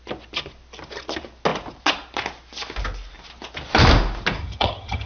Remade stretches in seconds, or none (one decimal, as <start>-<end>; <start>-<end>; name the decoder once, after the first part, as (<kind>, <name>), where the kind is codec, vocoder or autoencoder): 4.4-5.1 (vocoder, HiFi-GAN)